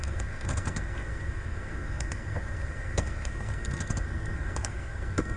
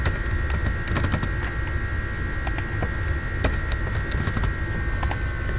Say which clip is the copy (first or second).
first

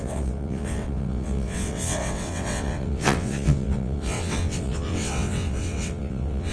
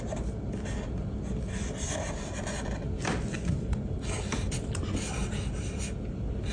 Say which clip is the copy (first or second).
first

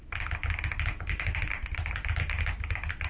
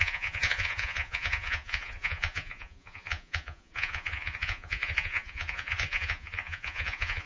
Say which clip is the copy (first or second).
second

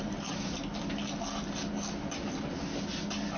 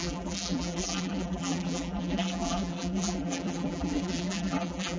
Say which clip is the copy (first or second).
second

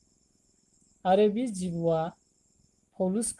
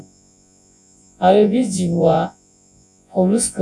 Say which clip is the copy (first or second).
second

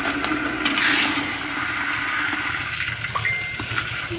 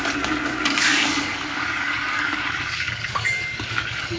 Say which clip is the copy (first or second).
second